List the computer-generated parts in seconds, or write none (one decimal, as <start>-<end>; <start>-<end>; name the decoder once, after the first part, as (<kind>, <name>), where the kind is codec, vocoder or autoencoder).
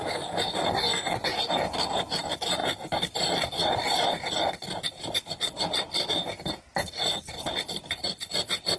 2.6-5.3 (vocoder, BigVGAN v2)